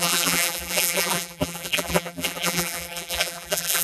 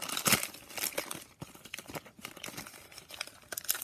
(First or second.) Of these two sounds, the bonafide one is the second